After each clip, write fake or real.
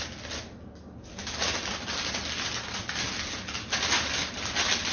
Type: real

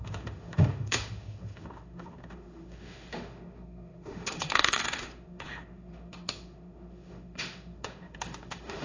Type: fake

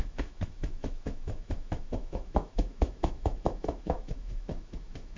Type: fake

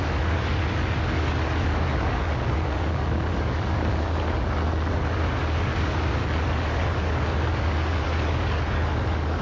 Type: fake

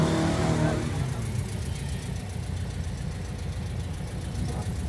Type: real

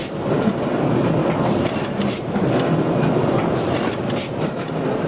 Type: real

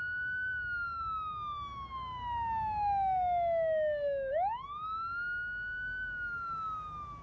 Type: real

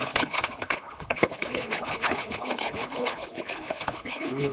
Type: fake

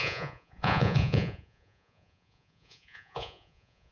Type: fake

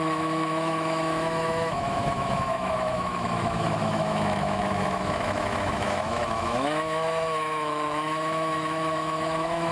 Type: fake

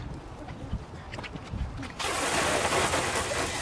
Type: real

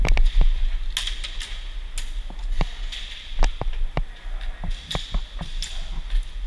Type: real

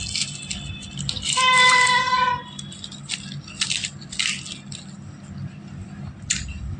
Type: real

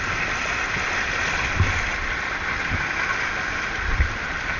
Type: real